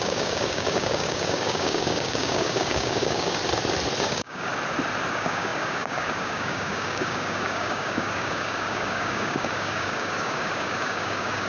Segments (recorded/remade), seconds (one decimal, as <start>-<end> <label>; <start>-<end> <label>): 0.0-3.4 remade; 3.4-4.0 recorded; 4.0-4.5 remade; 4.5-5.1 recorded; 5.1-11.5 remade